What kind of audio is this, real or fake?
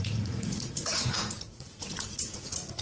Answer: fake